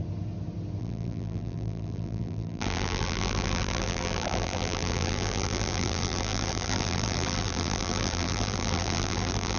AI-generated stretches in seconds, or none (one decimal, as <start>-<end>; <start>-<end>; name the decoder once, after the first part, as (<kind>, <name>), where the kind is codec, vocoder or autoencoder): 0.8-9.6 (vocoder, BigVGAN v2)